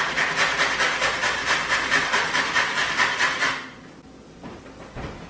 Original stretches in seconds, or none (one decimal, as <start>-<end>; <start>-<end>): 0.0-5.3